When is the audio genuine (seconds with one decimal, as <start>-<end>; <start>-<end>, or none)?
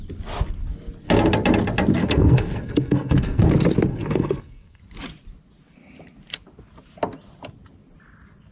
0.0-2.0; 3.5-3.9; 4.8-8.5